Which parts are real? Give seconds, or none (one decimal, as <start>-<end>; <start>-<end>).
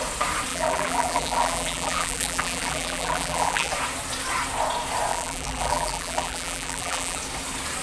0.0-0.5; 3.7-5.1; 7.2-7.8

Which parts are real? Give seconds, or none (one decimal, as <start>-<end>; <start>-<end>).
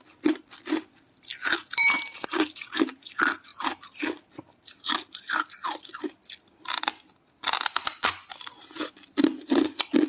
0.0-1.3; 2.3-3.5; 7.1-10.1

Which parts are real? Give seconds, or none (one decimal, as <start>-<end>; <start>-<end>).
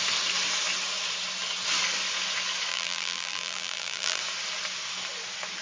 0.0-2.7; 4.2-5.6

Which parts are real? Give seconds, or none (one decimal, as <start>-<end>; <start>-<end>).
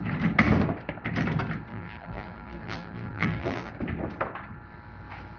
0.0-1.7; 3.7-5.4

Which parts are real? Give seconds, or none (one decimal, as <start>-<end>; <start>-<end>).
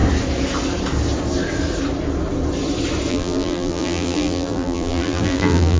0.0-3.1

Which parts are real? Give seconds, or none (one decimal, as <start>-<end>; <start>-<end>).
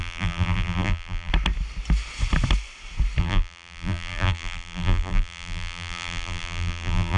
1.3-3.2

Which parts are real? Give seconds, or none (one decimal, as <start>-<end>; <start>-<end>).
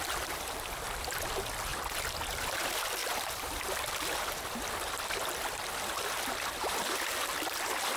1.7-2.5